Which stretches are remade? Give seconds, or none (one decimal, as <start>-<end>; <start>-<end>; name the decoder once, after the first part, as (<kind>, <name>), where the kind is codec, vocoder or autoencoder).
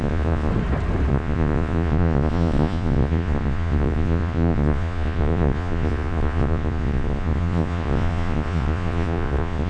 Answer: 0.0-0.5 (vocoder, Vocos); 1.1-9.7